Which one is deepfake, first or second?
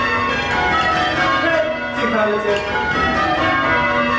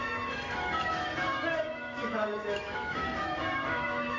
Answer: second